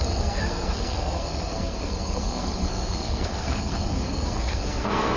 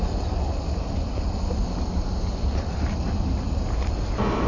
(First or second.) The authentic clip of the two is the second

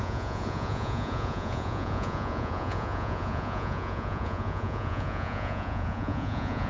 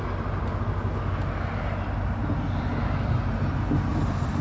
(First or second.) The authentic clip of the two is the second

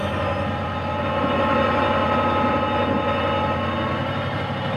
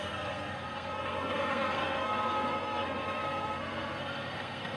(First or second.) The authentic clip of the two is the first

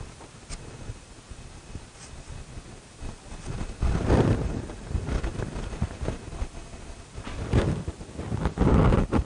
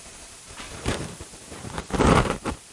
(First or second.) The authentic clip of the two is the first